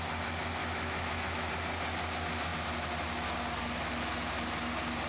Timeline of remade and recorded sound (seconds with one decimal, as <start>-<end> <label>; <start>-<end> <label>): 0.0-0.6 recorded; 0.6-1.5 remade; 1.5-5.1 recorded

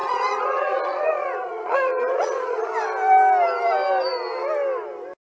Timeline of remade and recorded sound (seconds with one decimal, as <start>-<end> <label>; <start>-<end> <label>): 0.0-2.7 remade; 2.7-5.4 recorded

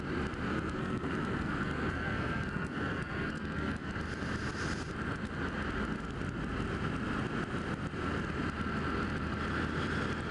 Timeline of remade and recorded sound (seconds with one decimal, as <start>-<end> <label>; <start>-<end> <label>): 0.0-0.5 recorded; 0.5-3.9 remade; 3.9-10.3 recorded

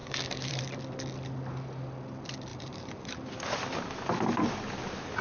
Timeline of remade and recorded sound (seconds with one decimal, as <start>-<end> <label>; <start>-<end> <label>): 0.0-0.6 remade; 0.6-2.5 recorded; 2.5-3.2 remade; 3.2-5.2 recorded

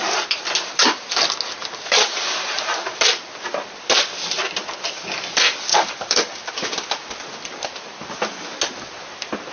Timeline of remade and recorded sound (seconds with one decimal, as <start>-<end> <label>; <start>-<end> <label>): 0.0-1.6 recorded; 1.6-3.1 remade; 3.1-5.7 recorded; 5.7-6.5 remade; 6.5-9.5 recorded